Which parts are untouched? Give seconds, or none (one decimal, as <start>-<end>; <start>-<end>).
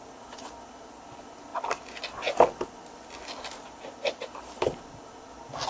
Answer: 0.0-1.5; 4.8-5.7